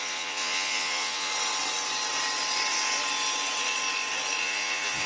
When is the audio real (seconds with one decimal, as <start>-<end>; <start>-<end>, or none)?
1.3-4.4